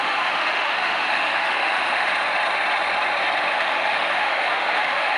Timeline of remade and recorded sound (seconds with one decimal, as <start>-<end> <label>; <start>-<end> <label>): 0.0-2.1 remade; 2.1-3.5 recorded; 3.5-5.2 remade

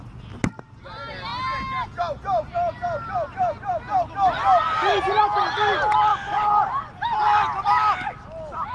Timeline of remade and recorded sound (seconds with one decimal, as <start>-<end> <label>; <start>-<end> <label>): 0.0-8.7 recorded

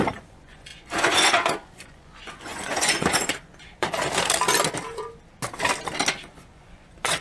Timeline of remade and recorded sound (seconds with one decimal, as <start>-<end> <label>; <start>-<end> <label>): 0.0-4.0 remade; 4.0-6.2 recorded; 6.2-7.2 remade

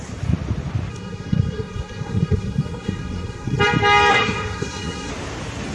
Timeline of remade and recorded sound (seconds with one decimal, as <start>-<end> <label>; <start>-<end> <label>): 0.0-0.9 recorded; 0.9-3.6 remade; 3.6-4.1 recorded; 4.1-5.1 remade; 5.1-5.7 recorded

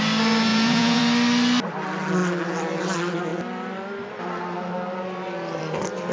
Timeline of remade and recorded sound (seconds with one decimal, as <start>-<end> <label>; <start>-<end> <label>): 0.0-0.5 recorded; 0.5-1.0 remade; 1.0-6.1 recorded

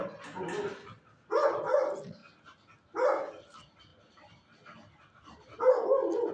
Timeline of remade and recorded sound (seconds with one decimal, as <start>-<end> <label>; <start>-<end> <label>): 0.0-6.3 recorded

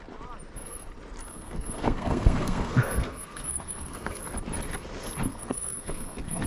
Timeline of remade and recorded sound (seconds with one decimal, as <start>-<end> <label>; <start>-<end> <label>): 0.0-1.3 recorded; 1.3-4.2 remade; 4.2-5.3 recorded; 5.3-6.5 remade

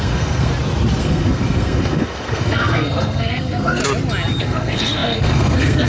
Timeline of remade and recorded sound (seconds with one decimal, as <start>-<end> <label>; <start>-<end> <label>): 0.0-0.5 remade; 0.5-1.0 recorded; 1.0-3.8 remade; 3.8-4.4 recorded; 4.4-5.9 remade